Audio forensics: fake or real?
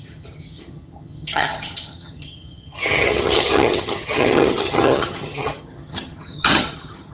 fake